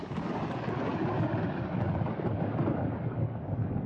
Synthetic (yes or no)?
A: yes